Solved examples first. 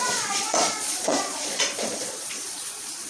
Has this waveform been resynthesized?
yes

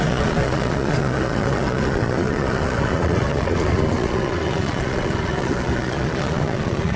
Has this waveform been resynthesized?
yes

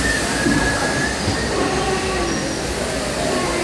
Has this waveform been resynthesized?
no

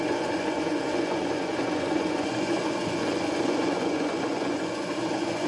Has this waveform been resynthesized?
yes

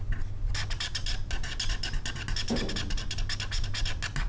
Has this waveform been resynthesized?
no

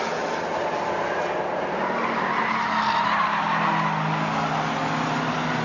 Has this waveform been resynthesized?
no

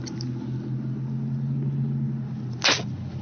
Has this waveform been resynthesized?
no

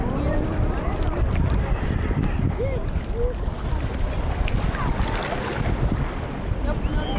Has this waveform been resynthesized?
no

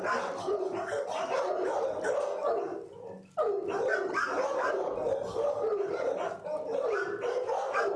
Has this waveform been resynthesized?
no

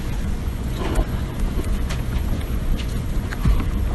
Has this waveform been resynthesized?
yes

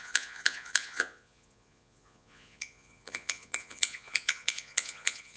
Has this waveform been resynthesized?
yes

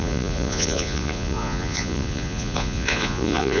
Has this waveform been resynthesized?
yes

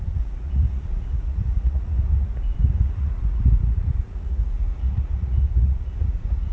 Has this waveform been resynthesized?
yes